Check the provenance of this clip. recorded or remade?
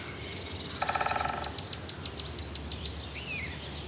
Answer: recorded